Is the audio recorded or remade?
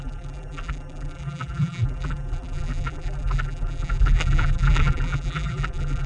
remade